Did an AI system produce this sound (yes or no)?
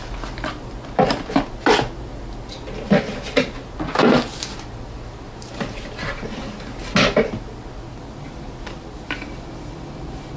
no